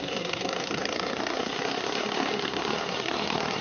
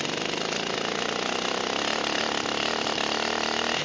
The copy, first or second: first